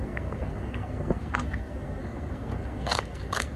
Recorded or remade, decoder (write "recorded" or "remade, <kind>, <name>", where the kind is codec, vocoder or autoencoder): remade, codec, SNAC